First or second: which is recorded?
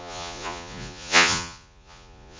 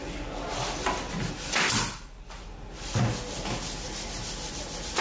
second